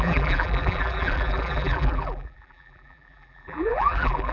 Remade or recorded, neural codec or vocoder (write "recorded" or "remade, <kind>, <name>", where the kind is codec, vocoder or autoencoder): remade, vocoder, BigVGAN v2